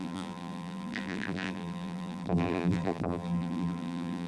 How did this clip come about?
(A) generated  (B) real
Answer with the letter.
A